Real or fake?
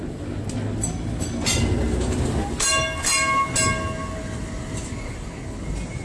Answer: real